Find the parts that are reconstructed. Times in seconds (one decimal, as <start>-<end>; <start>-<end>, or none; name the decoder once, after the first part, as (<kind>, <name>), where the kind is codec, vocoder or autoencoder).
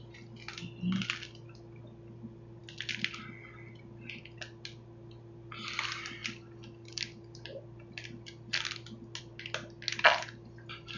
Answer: none